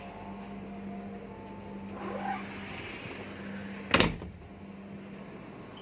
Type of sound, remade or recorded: recorded